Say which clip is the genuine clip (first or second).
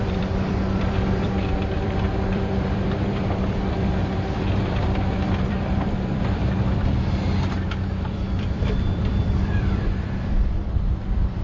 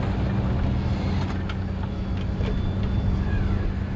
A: second